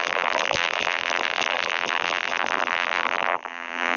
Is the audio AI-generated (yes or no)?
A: yes